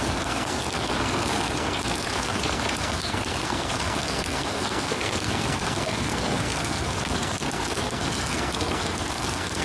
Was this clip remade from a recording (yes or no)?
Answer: yes